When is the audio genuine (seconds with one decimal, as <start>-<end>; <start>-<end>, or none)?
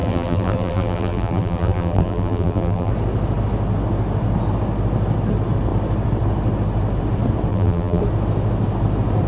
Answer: 2.9-7.5; 8.0-9.3